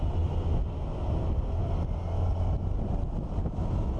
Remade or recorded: recorded